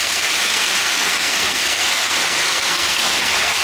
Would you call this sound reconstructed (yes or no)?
yes